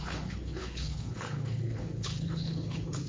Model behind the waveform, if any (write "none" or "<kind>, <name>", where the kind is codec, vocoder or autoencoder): codec, HILCodec